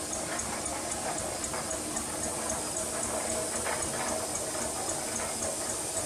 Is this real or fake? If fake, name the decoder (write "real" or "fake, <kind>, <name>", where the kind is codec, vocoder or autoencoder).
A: real